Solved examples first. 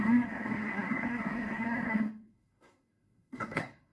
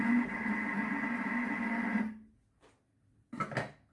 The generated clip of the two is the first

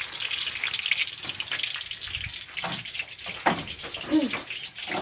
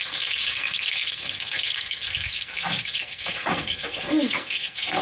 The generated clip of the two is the second